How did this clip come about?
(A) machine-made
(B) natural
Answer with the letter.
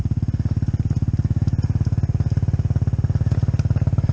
B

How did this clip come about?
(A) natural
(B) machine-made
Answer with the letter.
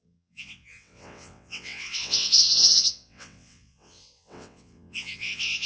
B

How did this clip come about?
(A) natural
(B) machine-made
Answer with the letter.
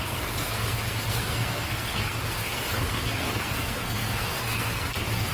B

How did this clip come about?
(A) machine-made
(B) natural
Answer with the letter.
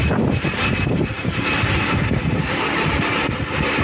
B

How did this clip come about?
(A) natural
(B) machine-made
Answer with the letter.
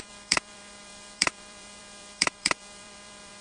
B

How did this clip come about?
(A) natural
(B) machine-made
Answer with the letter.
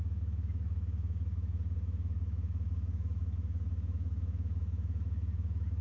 B